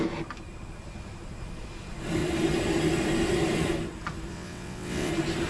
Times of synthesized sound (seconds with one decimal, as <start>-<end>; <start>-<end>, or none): 4.3-5.1

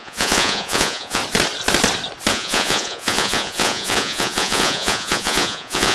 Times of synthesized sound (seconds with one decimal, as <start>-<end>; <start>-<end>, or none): 0.0-1.2; 2.3-5.9

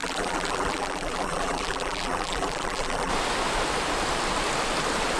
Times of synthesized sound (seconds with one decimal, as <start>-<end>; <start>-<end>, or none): 0.0-3.1